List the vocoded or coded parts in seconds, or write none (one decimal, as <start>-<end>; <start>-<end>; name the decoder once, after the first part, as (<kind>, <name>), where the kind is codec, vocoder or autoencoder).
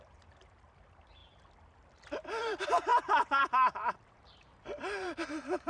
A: 0.0-1.2 (vocoder, BigVGAN v2); 2.4-5.7